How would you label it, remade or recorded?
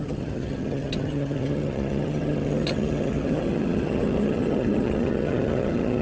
remade